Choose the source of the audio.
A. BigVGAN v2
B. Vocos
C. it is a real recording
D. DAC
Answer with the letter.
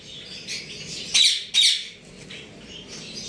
C